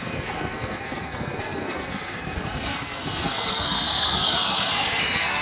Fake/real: fake